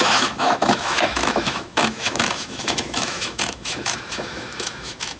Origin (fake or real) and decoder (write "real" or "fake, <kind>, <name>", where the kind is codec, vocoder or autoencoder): fake, autoencoder, DAC-VAE